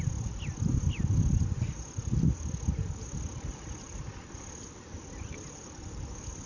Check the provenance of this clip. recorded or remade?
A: remade